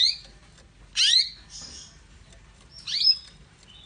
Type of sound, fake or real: real